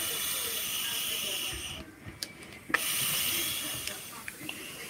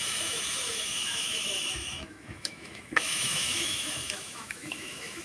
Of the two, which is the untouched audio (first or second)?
first